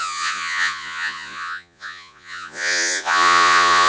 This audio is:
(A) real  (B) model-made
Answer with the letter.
B